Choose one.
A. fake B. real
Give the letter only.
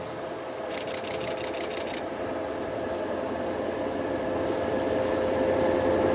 B